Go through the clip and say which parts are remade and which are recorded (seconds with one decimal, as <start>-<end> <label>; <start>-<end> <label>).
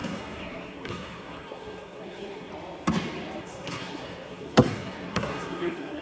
0.0-2.5 remade; 2.5-3.4 recorded; 3.4-6.0 remade